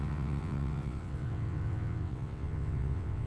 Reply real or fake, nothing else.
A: fake